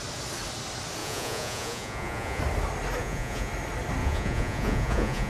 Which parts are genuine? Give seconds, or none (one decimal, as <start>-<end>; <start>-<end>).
0.0-1.0; 2.4-3.0; 3.5-4.0